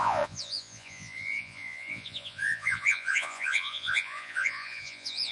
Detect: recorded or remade remade